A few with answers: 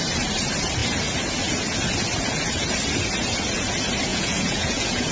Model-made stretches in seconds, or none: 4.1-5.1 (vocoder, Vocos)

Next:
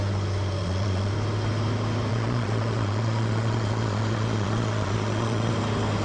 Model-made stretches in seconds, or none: 0.6-1.1 (vocoder, Vocos); 2.1-5.5

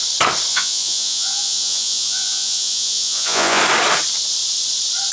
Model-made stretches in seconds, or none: 0.5-3.6 (vocoder, Vocos)

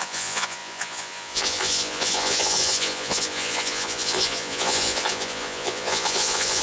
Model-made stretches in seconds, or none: 0.0-6.6 (vocoder, Vocos)

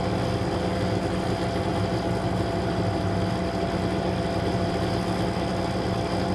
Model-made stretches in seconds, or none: none